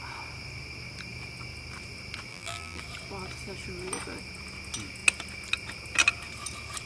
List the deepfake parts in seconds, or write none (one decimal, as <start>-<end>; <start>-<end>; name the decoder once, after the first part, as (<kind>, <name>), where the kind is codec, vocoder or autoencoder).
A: 2.3-2.8 (vocoder, BigVGAN v2)